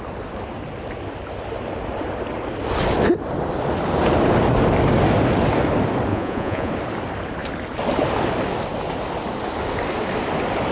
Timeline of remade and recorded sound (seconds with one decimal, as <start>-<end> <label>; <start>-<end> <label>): 0.0-6.1 recorded; 6.1-6.7 remade; 6.7-10.7 recorded